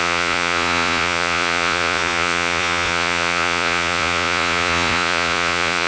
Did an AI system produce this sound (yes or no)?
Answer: yes